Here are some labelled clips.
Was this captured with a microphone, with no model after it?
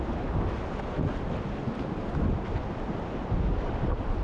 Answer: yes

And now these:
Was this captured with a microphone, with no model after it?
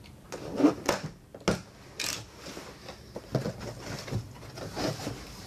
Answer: yes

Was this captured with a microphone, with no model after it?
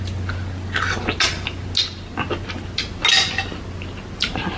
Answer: yes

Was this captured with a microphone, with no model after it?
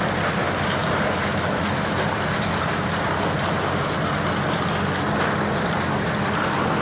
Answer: yes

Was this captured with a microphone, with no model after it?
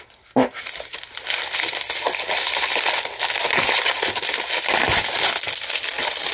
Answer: yes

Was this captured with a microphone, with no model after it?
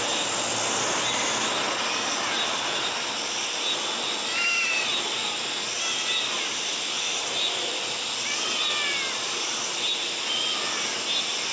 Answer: yes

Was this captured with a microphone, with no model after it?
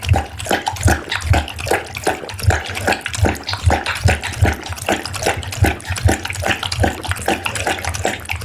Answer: yes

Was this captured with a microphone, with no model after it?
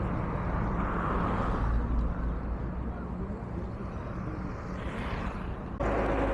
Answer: yes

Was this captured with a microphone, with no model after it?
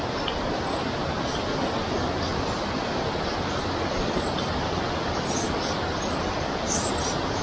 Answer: yes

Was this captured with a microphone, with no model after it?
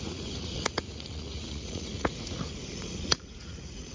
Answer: no